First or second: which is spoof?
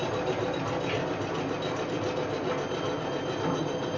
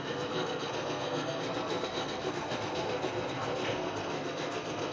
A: second